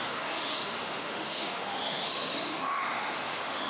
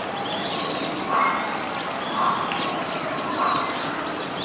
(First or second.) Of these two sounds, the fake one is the first